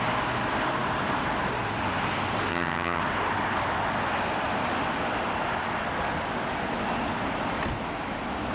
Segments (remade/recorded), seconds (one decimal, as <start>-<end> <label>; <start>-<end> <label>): 0.0-2.5 recorded; 2.5-3.0 remade; 3.0-8.5 recorded